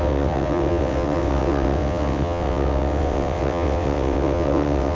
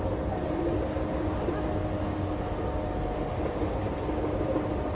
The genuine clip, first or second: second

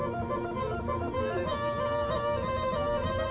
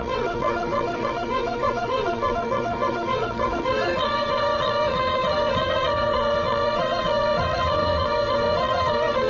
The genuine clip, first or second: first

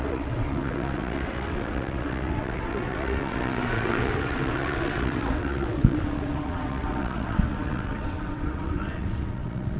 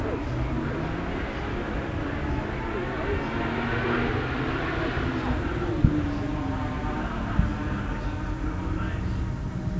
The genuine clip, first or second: second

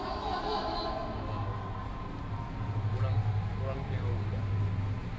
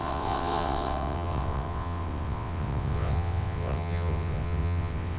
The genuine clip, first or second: first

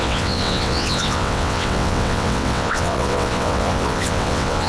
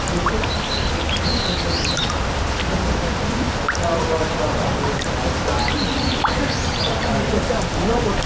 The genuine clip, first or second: second